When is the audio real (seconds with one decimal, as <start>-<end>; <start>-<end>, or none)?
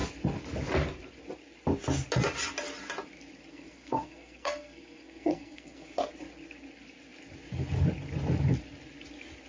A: 0.0-3.5; 6.1-9.5